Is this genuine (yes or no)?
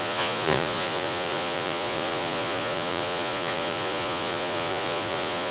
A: no